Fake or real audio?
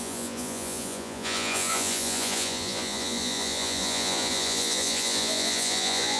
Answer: fake